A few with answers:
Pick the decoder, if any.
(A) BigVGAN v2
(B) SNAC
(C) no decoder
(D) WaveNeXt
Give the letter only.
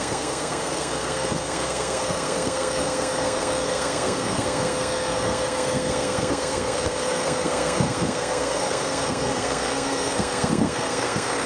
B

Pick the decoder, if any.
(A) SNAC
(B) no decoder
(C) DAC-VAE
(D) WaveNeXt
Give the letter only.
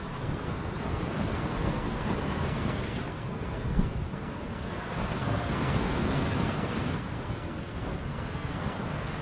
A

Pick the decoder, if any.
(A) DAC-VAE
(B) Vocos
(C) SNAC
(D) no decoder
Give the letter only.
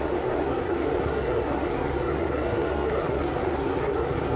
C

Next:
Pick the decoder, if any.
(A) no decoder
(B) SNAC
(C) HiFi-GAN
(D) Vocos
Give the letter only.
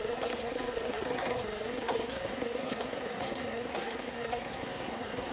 B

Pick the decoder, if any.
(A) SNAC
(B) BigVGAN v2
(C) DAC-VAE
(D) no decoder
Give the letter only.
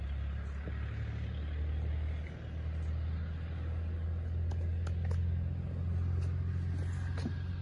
D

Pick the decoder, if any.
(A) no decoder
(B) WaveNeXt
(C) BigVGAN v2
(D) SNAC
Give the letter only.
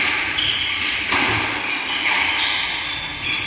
A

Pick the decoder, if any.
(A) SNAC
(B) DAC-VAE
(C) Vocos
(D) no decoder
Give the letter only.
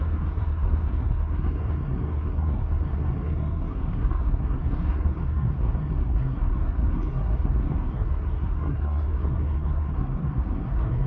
A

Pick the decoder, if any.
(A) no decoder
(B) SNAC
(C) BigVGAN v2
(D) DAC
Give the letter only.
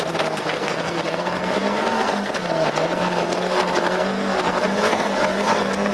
B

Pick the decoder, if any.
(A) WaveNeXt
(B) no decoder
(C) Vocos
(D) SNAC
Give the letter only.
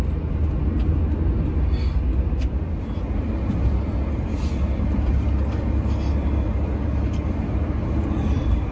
B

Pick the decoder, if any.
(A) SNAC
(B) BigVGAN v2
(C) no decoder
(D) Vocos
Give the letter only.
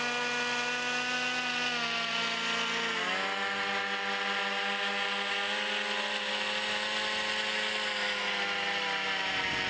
C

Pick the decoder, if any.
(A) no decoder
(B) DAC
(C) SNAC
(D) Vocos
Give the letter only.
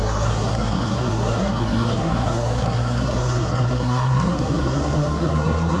C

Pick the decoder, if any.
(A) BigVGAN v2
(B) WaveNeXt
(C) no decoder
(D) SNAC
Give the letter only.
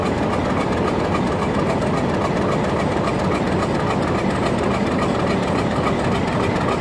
C